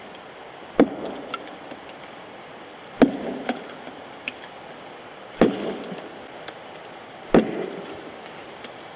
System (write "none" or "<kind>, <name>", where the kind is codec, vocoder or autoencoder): none